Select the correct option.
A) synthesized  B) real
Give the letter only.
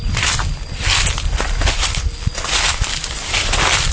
B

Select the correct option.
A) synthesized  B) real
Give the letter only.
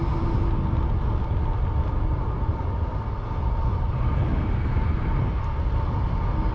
B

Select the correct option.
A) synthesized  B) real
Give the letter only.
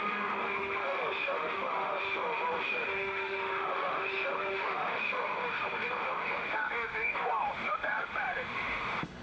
A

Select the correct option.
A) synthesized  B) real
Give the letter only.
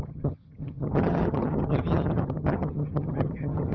A